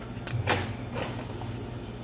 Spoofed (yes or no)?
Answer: no